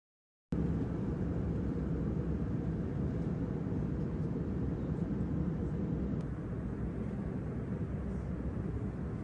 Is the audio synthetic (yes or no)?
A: no